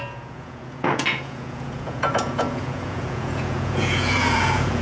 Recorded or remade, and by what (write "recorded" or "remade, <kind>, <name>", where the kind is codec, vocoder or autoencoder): remade, vocoder, Vocos